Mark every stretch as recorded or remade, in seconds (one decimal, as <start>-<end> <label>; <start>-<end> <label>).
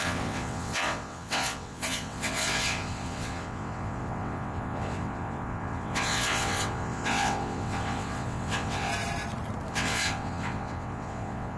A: 0.0-8.9 remade; 8.9-9.7 recorded; 9.7-11.6 remade